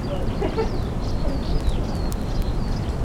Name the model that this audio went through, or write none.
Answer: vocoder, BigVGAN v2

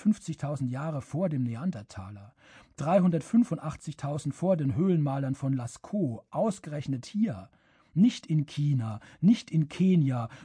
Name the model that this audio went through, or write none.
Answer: none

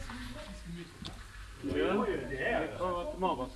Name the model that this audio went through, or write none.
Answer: none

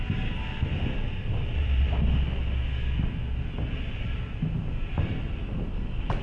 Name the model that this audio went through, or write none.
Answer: none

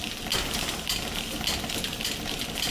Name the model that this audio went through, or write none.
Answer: none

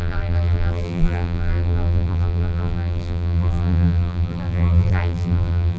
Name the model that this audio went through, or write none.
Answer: vocoder, BigVGAN v2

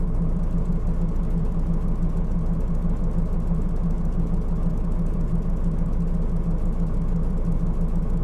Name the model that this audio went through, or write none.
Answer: none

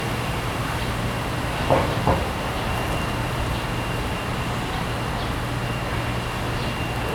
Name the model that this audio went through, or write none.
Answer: none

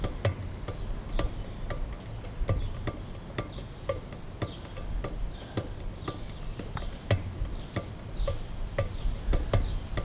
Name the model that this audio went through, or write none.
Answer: none